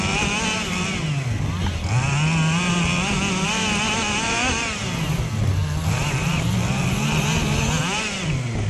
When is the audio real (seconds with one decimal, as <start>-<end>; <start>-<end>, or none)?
0.0-8.7